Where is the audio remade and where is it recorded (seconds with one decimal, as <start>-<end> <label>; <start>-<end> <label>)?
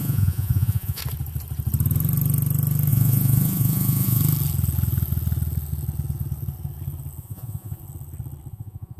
0.0-1.0 remade; 1.0-2.9 recorded; 2.9-4.2 remade; 4.2-7.2 recorded; 7.2-7.8 remade; 7.8-8.5 recorded; 8.5-9.0 remade